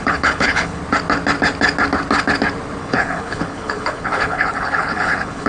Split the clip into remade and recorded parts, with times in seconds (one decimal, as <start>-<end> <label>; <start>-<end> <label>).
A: 0.0-0.8 remade; 0.8-2.8 recorded; 2.8-5.5 remade